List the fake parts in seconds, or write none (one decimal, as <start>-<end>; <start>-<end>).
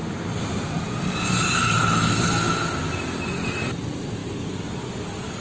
0.0-3.2